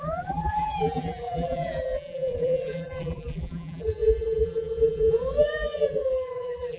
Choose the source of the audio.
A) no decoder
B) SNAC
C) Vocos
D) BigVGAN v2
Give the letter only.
D